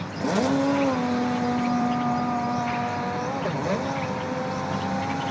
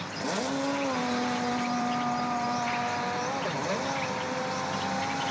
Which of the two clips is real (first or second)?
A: first